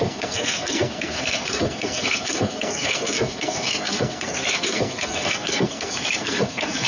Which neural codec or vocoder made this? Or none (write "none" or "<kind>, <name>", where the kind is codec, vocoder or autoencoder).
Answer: codec, SNAC